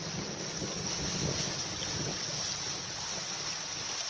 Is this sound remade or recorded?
recorded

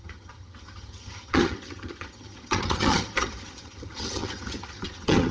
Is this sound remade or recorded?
remade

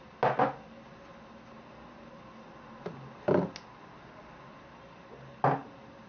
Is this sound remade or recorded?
recorded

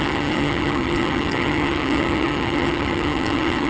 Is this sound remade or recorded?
remade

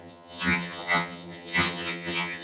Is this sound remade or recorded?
remade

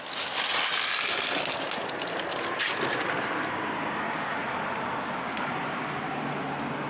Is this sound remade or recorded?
recorded